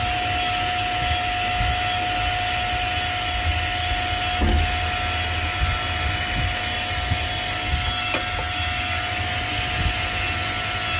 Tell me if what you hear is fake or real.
real